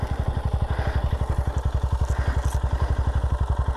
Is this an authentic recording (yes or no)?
yes